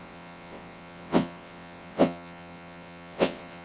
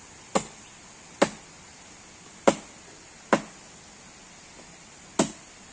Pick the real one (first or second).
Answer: second